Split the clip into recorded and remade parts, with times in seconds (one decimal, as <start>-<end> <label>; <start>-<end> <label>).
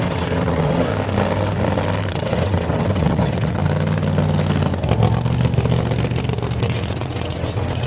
0.0-0.9 remade; 0.9-2.1 recorded; 2.1-3.6 remade; 3.6-6.6 recorded; 6.6-7.9 remade